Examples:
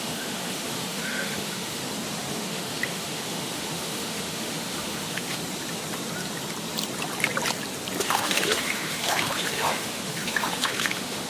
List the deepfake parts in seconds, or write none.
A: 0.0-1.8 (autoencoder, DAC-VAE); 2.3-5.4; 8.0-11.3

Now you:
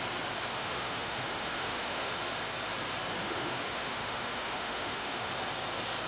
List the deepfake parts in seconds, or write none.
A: 0.5-2.1 (autoencoder, DAC-VAE); 3.2-5.3

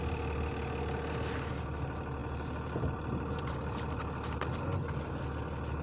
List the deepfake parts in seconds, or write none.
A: none

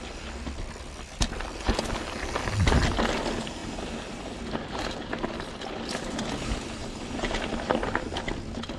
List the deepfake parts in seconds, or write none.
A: none

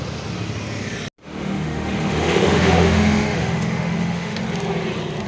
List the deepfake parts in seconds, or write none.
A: 1.2-4.4 (autoencoder, DAC-VAE)

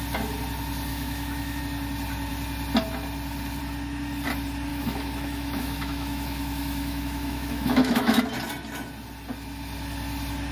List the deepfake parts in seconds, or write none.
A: 0.9-1.6 (autoencoder, DAC-VAE); 4.7-8.2